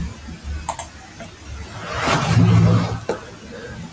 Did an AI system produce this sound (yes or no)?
no